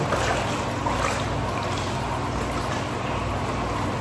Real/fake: real